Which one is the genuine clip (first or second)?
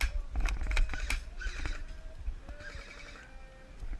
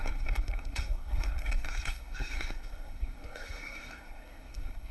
first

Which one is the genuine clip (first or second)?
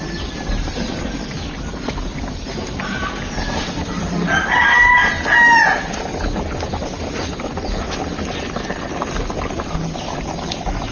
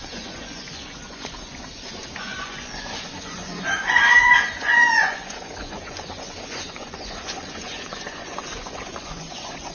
first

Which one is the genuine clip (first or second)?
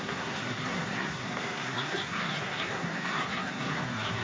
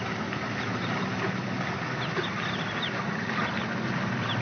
second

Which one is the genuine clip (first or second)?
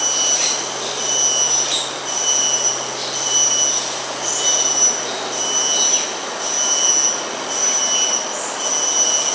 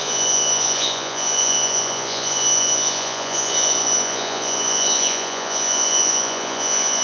first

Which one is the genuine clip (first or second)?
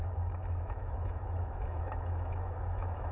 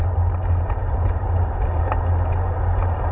second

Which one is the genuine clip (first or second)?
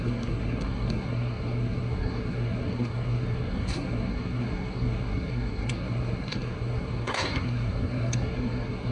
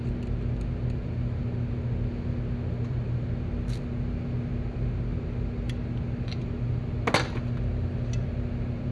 second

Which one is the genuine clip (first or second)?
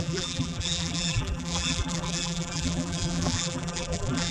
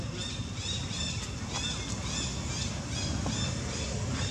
second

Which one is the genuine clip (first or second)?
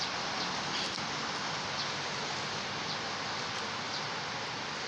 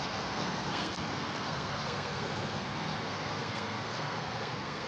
first